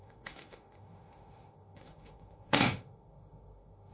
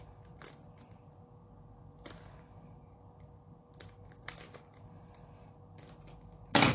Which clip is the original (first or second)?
second